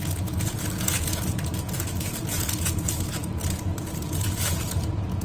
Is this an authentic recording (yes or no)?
no